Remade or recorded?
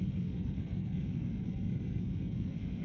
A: remade